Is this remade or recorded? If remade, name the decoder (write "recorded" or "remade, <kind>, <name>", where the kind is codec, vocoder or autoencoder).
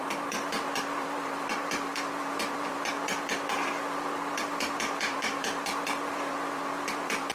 remade, vocoder, BigVGAN v2